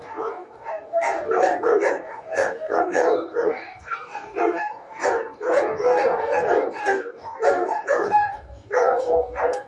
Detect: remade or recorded remade